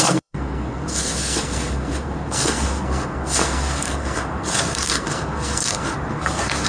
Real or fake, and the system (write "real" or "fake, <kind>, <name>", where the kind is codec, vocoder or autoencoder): fake, codec, SNAC